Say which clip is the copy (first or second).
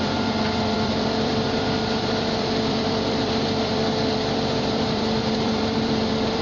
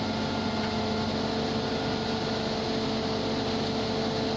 first